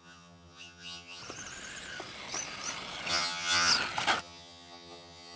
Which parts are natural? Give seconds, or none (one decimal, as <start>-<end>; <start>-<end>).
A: 1.2-3.1; 3.7-4.2